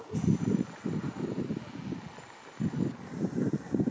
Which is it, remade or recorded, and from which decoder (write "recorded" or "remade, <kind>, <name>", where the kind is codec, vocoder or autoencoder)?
recorded